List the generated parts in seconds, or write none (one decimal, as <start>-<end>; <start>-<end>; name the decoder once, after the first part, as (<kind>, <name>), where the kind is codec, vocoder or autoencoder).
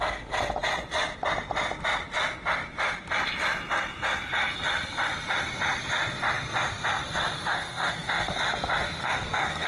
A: 7.3-8.4 (codec, SNAC); 9.0-9.7